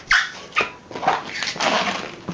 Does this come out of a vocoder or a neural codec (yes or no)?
no